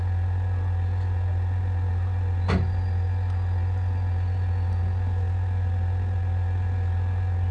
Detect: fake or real real